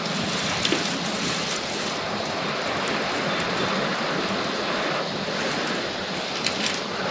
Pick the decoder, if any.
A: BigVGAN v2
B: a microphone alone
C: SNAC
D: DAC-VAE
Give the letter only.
B